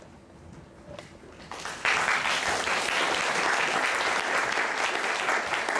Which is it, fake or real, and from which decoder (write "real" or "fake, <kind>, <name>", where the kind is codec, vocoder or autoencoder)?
real